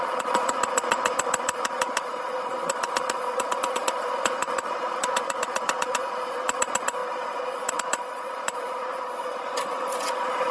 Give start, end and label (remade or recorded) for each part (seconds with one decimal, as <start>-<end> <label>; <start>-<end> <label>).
0.0-10.5 remade